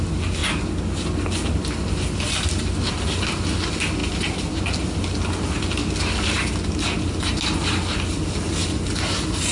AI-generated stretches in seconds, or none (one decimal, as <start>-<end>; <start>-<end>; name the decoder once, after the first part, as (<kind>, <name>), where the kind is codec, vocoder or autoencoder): none